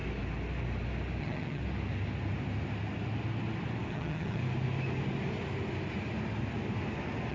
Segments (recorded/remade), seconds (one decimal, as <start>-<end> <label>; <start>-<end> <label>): 0.0-1.2 recorded; 1.2-1.6 remade; 1.6-3.9 recorded; 3.9-4.4 remade; 4.4-7.3 recorded